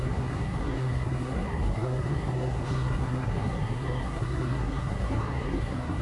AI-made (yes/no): yes